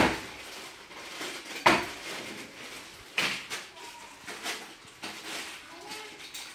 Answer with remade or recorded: recorded